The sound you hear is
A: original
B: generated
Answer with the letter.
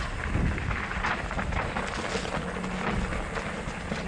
A